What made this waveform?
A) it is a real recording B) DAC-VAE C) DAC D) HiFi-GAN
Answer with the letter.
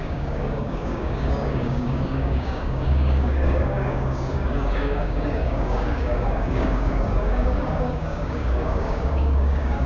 C